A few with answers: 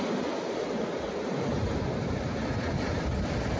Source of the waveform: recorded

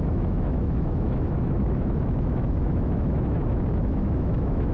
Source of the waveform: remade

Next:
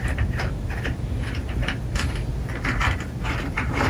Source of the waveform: recorded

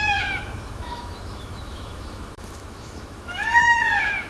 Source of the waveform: remade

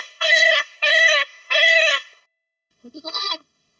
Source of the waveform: remade